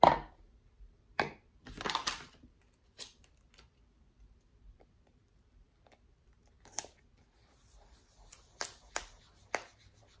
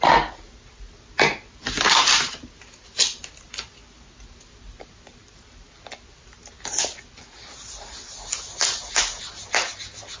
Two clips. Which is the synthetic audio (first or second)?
first